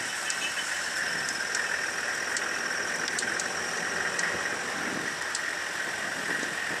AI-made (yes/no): no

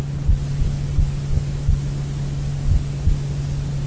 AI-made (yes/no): no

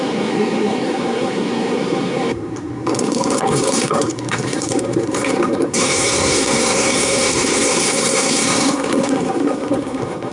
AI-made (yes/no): yes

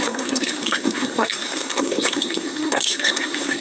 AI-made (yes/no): yes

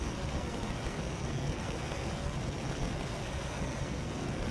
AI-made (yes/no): yes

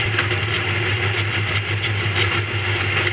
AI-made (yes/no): no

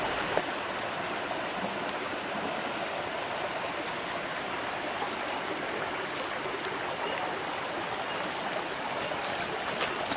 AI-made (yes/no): no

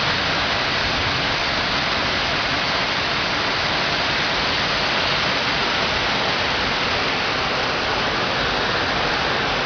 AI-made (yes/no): no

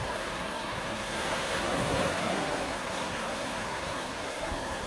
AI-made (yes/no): yes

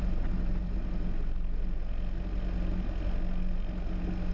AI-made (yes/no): no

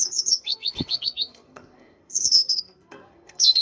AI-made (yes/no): yes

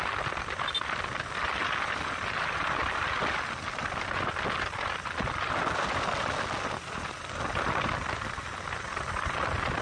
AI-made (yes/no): no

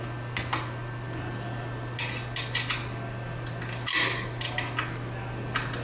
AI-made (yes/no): no